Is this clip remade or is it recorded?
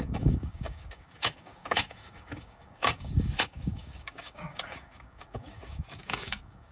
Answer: remade